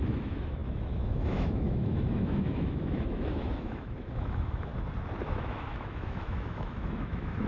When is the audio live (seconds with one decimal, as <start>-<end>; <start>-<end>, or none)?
4.7-5.2